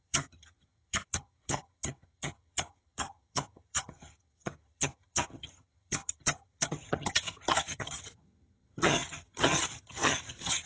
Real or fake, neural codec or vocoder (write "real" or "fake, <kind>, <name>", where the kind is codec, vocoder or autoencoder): fake, vocoder, HiFi-GAN